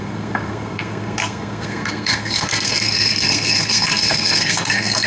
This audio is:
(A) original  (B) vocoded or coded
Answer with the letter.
B